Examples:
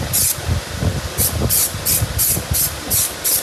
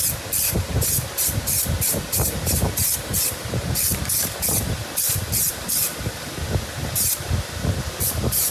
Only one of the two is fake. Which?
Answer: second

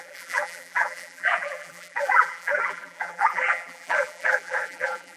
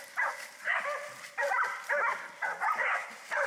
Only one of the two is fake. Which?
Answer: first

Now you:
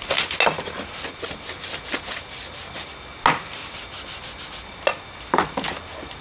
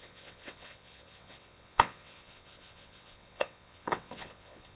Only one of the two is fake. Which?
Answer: second